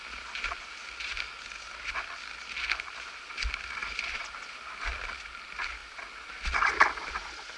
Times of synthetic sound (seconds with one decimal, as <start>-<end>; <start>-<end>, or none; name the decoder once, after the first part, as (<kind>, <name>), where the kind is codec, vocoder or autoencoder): 3.8-5.1 (vocoder, BigVGAN v2); 5.8-7.6